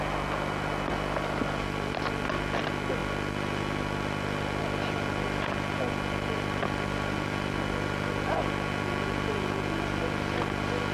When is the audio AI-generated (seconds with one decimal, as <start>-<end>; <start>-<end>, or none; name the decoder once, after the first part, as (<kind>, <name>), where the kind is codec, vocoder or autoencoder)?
none